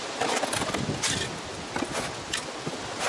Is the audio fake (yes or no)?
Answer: no